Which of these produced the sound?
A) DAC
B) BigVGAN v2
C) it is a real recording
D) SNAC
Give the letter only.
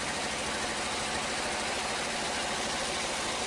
C